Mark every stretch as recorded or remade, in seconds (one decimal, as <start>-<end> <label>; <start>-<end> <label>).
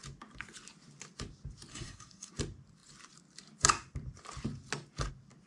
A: 0.0-1.7 recorded; 1.7-2.3 remade; 2.3-5.5 recorded